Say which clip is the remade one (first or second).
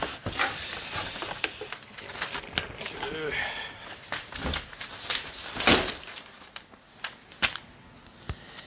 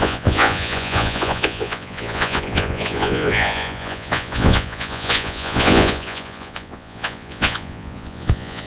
second